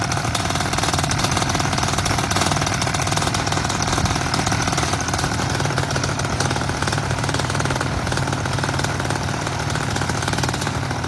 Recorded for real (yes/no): no